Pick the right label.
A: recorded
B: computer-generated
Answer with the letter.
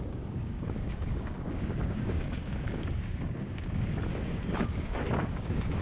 B